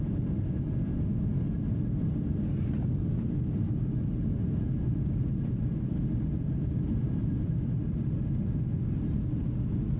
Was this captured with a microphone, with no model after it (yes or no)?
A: yes